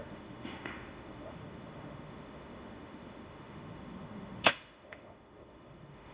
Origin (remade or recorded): remade